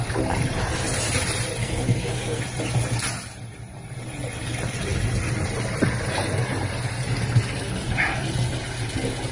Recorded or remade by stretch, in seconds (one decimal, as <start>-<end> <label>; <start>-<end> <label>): 0.0-1.6 recorded; 1.6-2.4 remade; 2.4-9.3 recorded